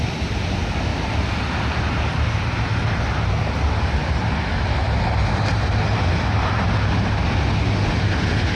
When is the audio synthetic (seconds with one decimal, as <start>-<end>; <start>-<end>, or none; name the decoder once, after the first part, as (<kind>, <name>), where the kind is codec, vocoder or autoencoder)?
none